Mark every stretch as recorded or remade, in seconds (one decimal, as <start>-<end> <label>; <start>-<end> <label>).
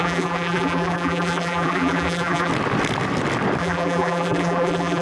0.0-2.5 remade; 2.5-3.6 recorded; 3.6-5.0 remade